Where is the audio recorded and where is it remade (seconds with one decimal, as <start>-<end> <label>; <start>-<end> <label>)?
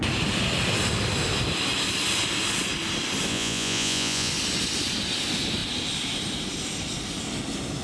0.0-3.3 recorded; 3.3-4.3 remade; 4.3-7.8 recorded